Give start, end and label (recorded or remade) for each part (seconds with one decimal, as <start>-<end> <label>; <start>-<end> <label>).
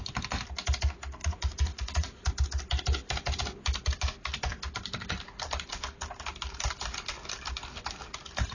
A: 0.0-1.2 recorded; 1.2-2.3 remade; 2.3-8.5 recorded